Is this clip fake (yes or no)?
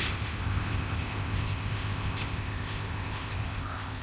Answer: yes